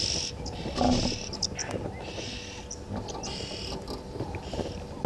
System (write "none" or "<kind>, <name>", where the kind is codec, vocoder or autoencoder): none